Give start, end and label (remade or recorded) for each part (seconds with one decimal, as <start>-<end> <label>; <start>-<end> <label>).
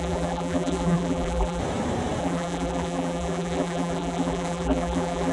0.0-1.6 remade; 1.6-2.2 recorded; 2.2-5.3 remade